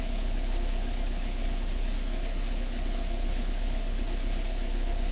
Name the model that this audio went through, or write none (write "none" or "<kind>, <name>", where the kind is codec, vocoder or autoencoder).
codec, HILCodec